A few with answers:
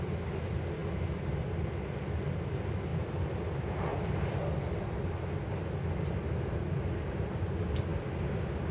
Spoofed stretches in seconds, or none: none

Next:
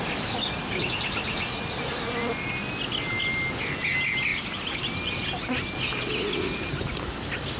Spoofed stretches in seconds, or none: none

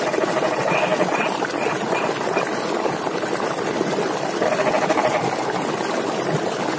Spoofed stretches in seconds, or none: none

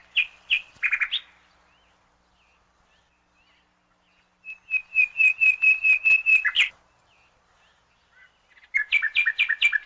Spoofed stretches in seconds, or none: none

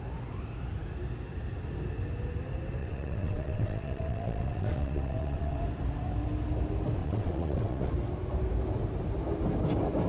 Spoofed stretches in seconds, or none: 2.8-5.6 (vocoder, WaveNeXt); 7.0-7.9

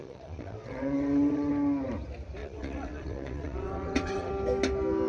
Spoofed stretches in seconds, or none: 0.0-1.5 (vocoder, WaveNeXt); 2.4-4.3

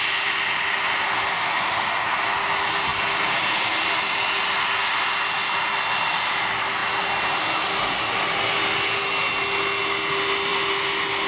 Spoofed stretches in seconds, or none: none